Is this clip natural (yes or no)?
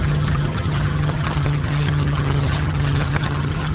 no